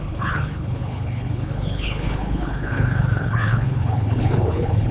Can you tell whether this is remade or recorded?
remade